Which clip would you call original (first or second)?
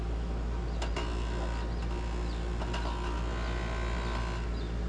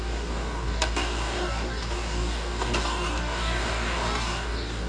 first